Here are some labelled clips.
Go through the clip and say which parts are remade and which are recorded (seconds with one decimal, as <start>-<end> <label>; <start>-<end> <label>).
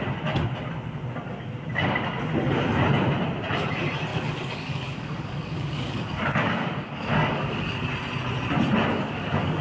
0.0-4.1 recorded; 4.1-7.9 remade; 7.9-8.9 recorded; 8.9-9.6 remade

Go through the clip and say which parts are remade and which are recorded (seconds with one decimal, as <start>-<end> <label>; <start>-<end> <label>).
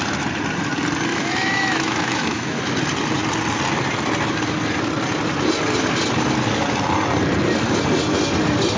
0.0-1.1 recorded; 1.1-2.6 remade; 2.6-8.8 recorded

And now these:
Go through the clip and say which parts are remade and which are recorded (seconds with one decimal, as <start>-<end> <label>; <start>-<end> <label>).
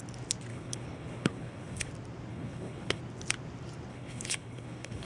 0.0-0.5 recorded; 0.5-1.9 remade; 1.9-2.3 recorded; 2.3-3.0 remade; 3.0-3.9 recorded; 3.9-5.1 remade